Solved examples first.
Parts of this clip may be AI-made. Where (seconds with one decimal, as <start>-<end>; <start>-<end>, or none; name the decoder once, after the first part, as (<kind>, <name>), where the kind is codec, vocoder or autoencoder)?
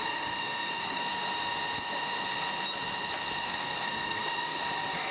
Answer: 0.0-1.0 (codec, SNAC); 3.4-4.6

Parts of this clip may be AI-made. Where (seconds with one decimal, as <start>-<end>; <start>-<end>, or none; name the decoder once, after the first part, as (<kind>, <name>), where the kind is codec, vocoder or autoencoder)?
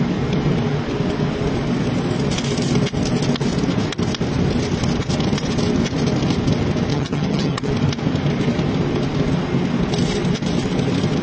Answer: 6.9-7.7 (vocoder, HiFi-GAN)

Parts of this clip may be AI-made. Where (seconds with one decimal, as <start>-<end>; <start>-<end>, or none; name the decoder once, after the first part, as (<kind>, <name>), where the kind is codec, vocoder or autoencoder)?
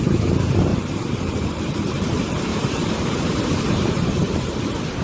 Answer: 0.7-1.6 (vocoder, BigVGAN v2); 2.5-3.9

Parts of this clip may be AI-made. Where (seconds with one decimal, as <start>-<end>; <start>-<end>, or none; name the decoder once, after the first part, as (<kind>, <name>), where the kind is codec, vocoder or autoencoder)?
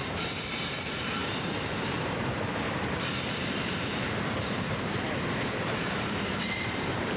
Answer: 0.0-7.2 (vocoder, BigVGAN v2)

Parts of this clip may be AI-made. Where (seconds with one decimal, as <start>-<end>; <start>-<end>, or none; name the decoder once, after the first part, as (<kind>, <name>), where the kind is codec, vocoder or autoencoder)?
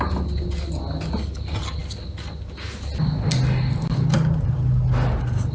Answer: none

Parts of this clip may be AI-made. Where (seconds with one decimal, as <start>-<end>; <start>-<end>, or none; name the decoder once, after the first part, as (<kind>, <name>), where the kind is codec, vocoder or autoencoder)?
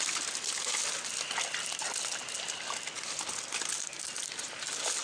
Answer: none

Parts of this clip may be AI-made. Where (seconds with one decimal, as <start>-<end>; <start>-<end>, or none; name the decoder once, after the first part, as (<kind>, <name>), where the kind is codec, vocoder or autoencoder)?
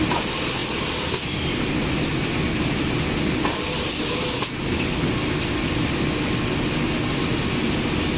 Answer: none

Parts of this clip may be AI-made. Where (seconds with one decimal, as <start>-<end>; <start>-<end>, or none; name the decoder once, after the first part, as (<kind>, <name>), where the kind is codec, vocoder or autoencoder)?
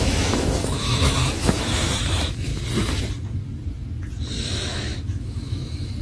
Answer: 0.0-2.5 (autoencoder, DAC-VAE); 4.4-6.0